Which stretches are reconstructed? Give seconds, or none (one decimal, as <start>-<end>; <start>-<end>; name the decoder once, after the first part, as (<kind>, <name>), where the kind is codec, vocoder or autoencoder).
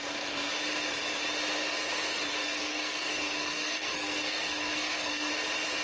0.0-0.5 (codec, SNAC); 2.4-5.3